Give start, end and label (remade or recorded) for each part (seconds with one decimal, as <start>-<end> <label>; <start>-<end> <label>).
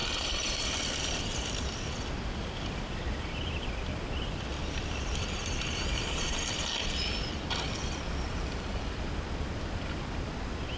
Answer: 0.0-10.8 recorded